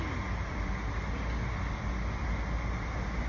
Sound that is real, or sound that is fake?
real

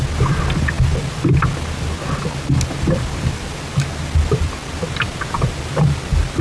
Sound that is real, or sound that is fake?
real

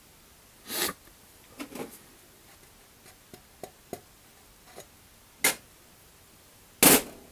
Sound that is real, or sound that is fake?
real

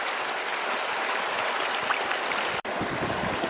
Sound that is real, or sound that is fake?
real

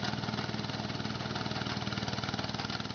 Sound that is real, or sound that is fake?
real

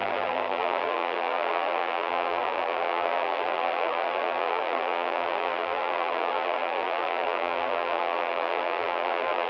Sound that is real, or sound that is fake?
fake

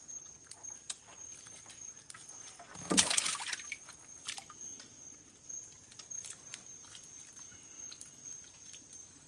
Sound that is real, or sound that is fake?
real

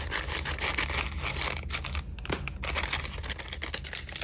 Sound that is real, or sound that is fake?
real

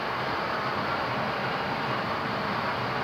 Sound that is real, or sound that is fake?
real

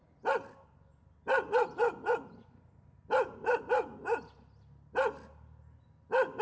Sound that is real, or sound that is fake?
real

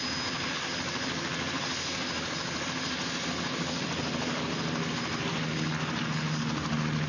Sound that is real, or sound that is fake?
real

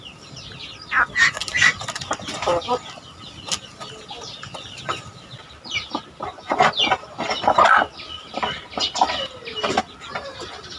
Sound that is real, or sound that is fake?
real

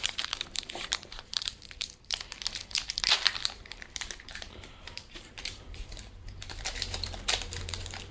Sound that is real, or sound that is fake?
fake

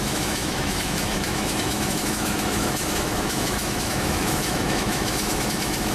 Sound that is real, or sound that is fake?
fake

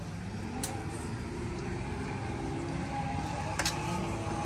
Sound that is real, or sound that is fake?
real